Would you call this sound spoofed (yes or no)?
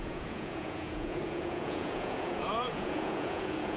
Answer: yes